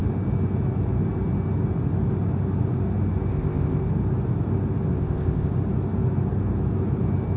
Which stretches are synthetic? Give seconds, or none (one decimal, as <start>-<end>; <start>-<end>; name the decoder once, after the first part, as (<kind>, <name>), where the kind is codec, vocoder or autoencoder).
3.3-3.8 (codec, ZipCodec); 4.9-5.5